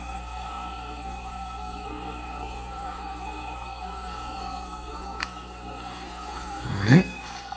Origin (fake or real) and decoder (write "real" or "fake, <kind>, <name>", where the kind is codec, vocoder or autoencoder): fake, codec, SNAC